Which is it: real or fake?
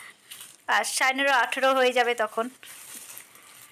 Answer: real